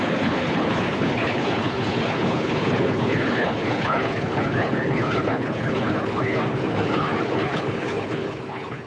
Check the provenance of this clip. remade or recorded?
remade